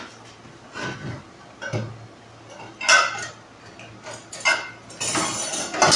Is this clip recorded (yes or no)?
yes